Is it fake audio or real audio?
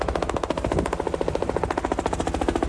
real